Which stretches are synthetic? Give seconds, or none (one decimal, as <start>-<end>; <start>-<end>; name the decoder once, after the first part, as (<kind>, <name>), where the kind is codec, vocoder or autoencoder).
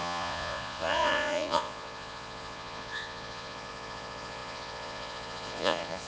0.0-6.1 (vocoder, Vocos)